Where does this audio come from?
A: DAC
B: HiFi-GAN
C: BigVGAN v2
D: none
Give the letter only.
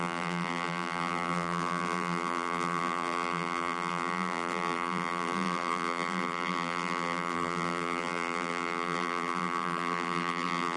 C